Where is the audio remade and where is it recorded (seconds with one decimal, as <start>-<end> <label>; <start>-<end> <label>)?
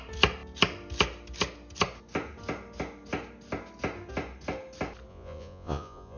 0.0-5.1 recorded; 5.1-6.2 remade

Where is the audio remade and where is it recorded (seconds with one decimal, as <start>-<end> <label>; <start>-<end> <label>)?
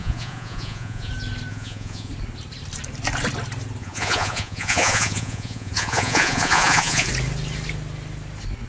0.0-1.1 remade; 1.1-1.5 recorded; 1.5-2.1 remade; 2.1-3.8 recorded; 3.8-7.1 remade; 7.1-8.7 recorded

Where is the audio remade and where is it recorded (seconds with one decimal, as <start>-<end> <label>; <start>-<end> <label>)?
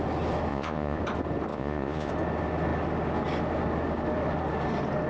0.0-0.5 recorded; 0.5-1.0 remade; 1.0-1.5 recorded; 1.5-2.1 remade; 2.1-5.1 recorded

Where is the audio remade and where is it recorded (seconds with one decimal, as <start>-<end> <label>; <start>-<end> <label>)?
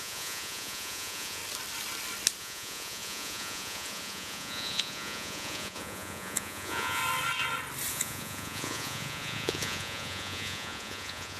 0.0-1.4 remade; 1.4-2.4 recorded; 2.4-7.0 remade; 7.0-7.9 recorded; 7.9-11.4 remade